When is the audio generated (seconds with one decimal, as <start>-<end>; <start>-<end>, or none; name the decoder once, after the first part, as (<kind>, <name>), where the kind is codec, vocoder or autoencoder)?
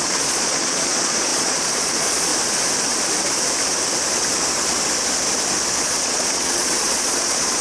0.0-2.3 (vocoder, Vocos); 5.8-7.6